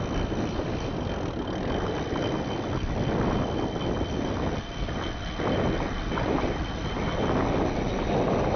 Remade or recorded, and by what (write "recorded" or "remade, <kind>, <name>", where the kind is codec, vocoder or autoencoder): recorded